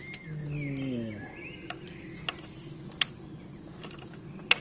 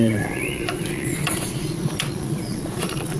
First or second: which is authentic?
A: first